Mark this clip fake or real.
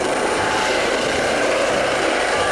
fake